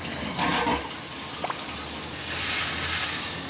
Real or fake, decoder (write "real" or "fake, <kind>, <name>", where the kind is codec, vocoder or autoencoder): real